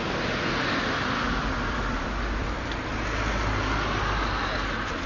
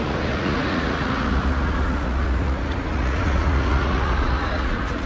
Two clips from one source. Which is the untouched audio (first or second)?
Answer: first